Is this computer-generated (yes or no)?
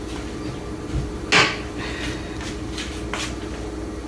no